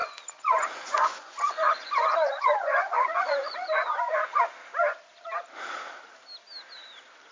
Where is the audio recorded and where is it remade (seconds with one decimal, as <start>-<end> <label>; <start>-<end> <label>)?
0.0-4.4 remade; 4.4-7.3 recorded